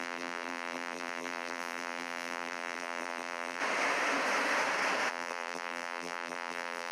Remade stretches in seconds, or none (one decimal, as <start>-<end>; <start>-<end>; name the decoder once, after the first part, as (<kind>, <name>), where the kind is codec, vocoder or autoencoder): 0.0-3.6 (vocoder, BigVGAN v2); 5.1-6.9